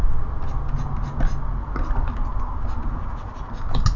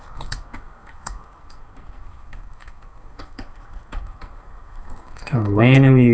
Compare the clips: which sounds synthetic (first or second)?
second